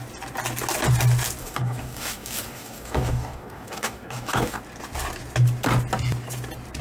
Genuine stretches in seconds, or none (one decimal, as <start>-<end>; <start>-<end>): 0.0-1.4; 4.6-6.8